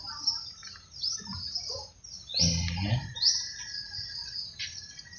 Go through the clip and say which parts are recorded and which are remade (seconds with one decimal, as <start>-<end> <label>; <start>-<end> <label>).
0.0-5.2 recorded